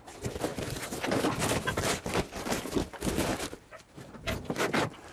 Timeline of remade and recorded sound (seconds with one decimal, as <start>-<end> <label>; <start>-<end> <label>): 0.0-3.3 recorded; 3.3-4.6 remade; 4.6-5.1 recorded